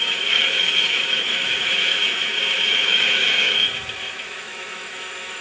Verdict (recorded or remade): remade